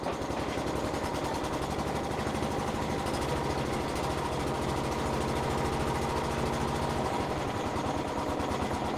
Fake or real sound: real